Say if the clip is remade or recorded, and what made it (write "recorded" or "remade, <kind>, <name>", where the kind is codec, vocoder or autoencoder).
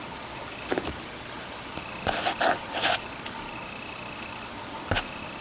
recorded